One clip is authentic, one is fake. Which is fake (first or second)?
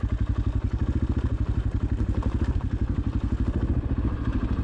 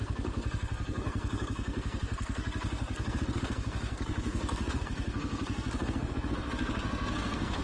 second